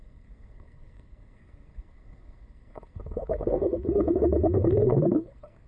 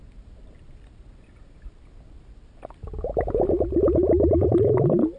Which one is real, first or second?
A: second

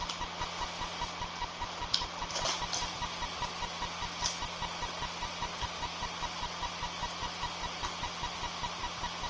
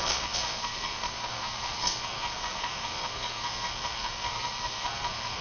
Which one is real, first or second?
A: first